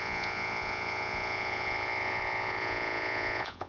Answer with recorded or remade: remade